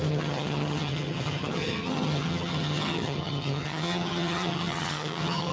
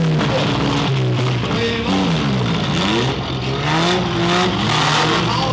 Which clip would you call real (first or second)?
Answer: second